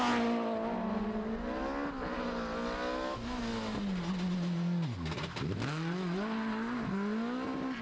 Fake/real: real